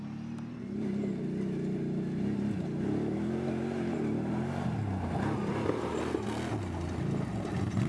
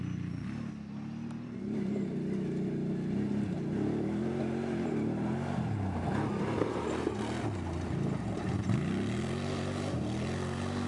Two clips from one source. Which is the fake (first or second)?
second